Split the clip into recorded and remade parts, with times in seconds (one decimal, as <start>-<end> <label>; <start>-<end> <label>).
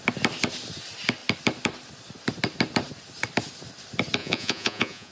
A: 0.0-4.2 recorded; 4.2-5.1 remade